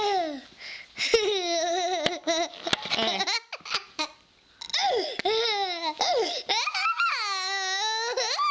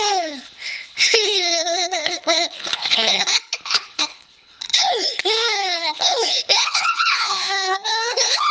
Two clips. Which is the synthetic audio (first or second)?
second